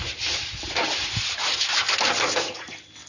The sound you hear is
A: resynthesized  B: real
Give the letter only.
B